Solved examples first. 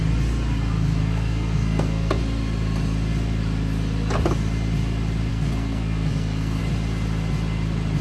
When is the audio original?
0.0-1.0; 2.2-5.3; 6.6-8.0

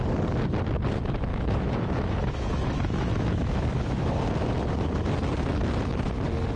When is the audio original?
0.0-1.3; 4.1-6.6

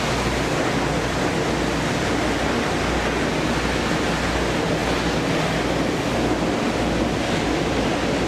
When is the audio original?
0.0-8.3

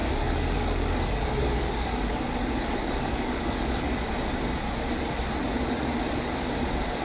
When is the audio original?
4.1-5.4; 6.3-7.0

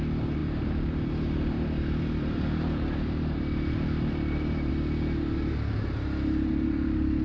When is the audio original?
0.0-0.4; 4.7-7.2